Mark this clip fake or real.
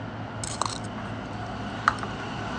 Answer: real